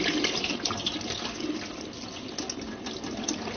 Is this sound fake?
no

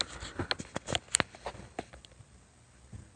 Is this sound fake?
no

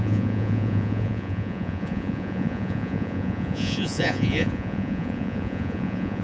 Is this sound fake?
yes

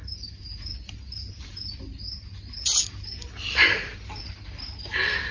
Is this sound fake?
no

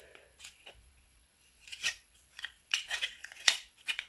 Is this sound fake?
yes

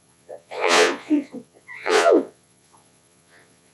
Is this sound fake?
yes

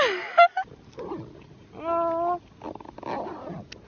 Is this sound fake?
no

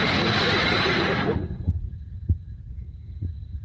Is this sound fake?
yes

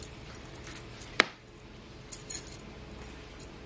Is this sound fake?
no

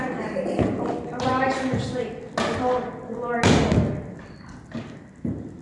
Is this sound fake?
no